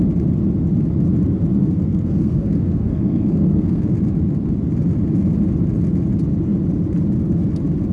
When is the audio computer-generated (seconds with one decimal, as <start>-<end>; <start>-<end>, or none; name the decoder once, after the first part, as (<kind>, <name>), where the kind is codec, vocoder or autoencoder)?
1.6-3.8 (codec, SNAC)